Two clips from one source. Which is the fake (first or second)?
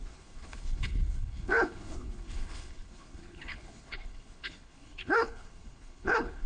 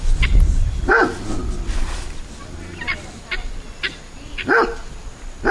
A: first